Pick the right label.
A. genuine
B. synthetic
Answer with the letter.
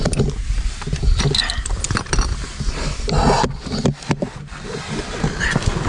A